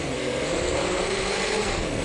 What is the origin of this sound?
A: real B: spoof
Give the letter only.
B